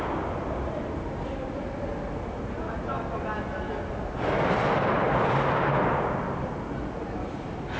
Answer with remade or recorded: recorded